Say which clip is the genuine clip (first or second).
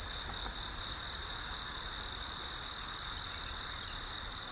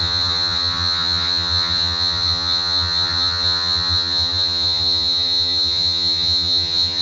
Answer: first